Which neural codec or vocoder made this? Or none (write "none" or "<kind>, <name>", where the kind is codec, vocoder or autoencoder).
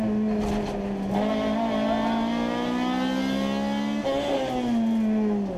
none